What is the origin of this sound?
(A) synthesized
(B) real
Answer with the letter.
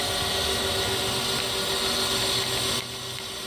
B